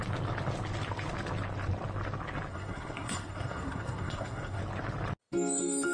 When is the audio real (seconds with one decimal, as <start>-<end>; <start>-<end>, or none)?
0.0-2.5; 4.6-5.9